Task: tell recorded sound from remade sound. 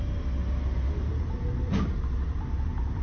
recorded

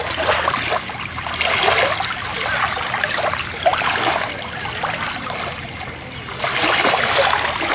recorded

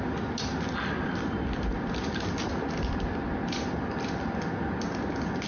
recorded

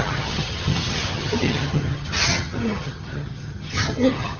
remade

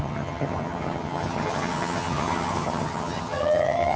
remade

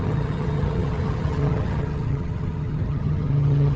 remade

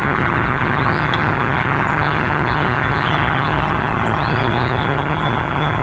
remade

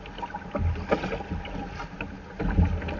recorded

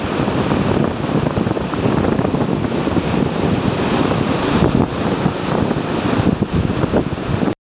recorded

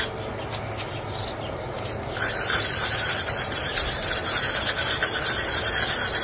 recorded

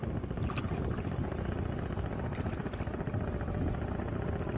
recorded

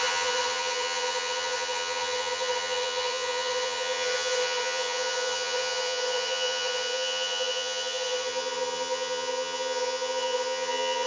remade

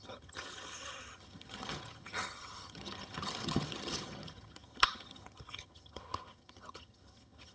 remade